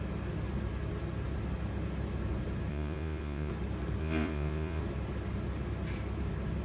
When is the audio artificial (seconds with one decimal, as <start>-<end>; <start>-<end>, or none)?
2.7-3.5; 4.0-4.8